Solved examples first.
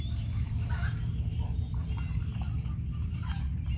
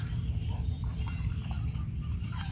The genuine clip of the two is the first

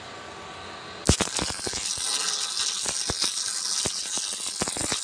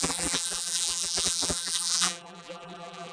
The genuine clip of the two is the first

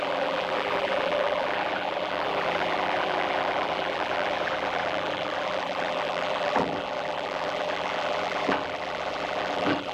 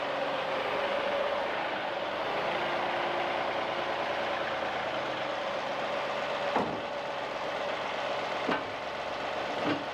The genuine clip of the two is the second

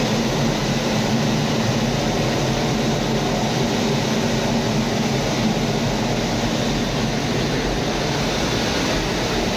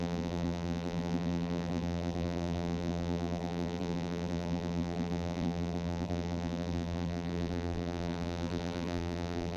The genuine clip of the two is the first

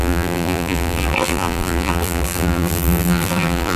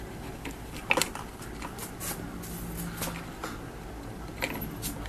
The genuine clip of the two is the second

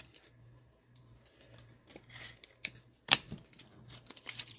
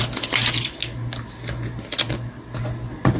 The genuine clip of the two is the second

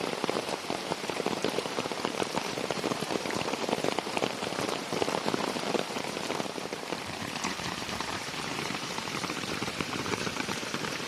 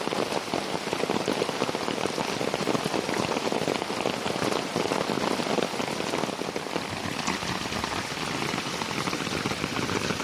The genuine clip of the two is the second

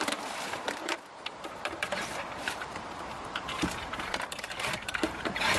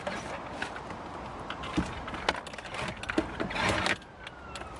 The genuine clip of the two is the second